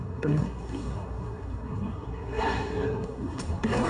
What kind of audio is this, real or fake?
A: fake